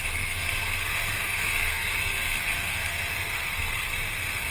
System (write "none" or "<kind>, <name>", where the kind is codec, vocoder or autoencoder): codec, SNAC